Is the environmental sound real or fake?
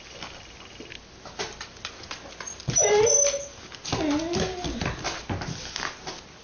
real